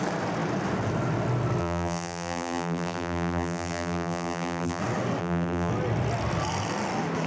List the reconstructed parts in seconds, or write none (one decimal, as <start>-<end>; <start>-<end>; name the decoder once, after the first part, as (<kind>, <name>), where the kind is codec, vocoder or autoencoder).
1.6-4.8 (vocoder, BigVGAN v2); 5.2-5.7